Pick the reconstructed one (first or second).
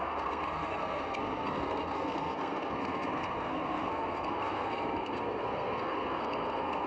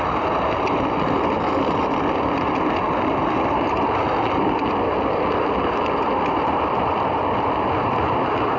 first